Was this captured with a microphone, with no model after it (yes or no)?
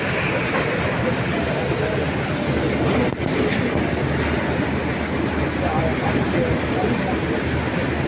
yes